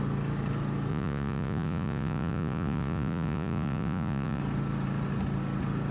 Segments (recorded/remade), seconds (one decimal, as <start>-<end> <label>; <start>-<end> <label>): 0.0-0.9 recorded; 0.9-4.4 remade; 4.4-5.9 recorded